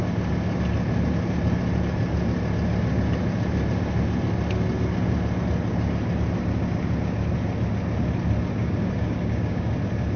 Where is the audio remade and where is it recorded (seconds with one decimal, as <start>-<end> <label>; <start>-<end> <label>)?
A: 0.0-8.6 recorded; 8.6-9.7 remade; 9.7-10.2 recorded